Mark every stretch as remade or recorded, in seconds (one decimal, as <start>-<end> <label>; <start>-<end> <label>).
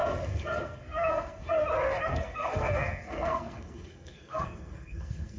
0.0-1.5 remade; 1.5-2.1 recorded; 2.1-5.4 remade